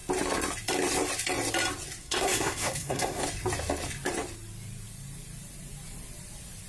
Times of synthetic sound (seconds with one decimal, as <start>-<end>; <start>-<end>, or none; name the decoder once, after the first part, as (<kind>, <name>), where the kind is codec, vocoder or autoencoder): 2.0-3.2 (codec, SNAC)